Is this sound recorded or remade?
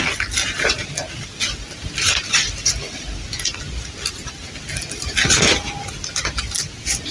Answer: recorded